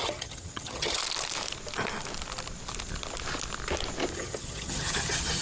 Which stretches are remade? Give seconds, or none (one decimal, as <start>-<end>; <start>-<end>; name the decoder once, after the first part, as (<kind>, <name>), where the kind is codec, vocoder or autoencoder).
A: 0.0-1.0 (vocoder, HiFi-GAN); 4.1-5.4